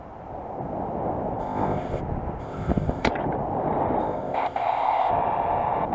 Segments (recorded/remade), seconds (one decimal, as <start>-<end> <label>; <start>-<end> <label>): 0.0-1.4 recorded; 1.4-2.0 remade; 2.0-2.4 recorded; 2.4-3.1 remade; 3.1-4.0 recorded; 4.0-5.1 remade; 5.1-5.9 recorded